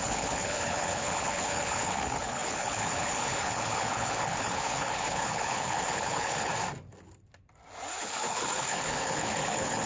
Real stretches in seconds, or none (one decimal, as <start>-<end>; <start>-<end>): 6.5-8.0